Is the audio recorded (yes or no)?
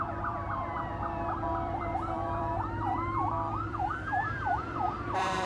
no